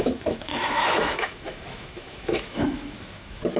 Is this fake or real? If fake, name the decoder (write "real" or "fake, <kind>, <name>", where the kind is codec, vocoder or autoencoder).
fake, autoencoder, DAC-VAE